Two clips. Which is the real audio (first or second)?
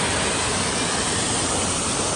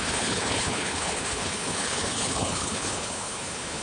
first